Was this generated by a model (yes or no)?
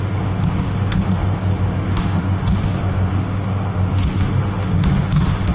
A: yes